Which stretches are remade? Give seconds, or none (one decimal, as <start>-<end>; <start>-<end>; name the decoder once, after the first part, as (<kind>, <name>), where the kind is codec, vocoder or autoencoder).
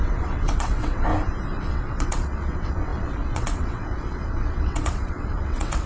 0.0-1.1 (vocoder, WaveNeXt); 1.6-5.9